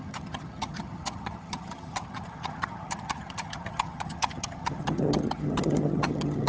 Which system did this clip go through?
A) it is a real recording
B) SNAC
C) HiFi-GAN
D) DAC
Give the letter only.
C